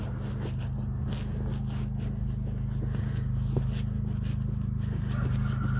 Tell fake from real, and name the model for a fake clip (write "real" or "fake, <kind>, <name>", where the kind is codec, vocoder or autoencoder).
real